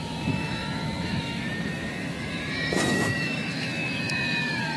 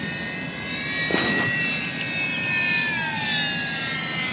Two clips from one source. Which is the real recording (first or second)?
second